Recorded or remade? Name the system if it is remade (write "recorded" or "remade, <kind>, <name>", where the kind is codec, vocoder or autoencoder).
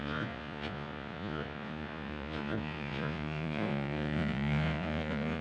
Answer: remade, vocoder, Vocos